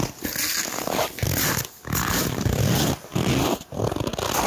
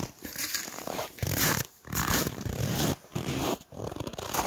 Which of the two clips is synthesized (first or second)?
second